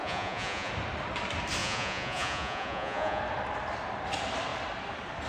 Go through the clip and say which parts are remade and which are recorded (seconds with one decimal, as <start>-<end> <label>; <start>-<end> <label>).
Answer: 0.0-0.7 remade; 0.7-1.6 recorded; 1.6-3.2 remade; 3.2-5.3 recorded